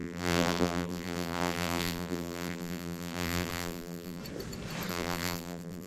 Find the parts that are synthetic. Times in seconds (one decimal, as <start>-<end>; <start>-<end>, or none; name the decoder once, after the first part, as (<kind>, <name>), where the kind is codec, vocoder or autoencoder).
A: 0.0-4.2 (vocoder, BigVGAN v2); 4.9-5.9